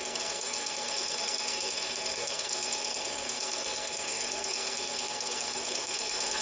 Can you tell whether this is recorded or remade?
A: remade